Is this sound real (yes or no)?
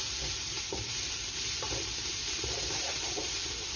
no